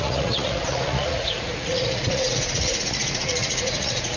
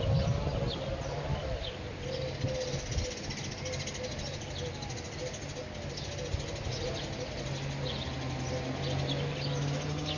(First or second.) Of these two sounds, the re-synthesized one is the first